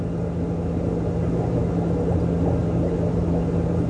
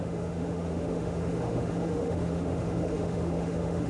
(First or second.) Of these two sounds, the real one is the first